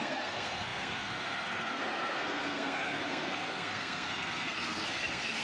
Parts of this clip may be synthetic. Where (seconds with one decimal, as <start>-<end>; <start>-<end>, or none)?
0.0-5.4

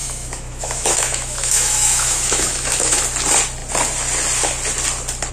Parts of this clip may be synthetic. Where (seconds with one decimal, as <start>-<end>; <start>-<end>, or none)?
0.0-3.0

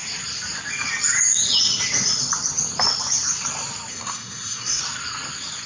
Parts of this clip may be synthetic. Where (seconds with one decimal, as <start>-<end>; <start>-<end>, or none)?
3.9-4.8

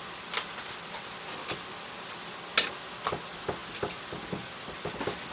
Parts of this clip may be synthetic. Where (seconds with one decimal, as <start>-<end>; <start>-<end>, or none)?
none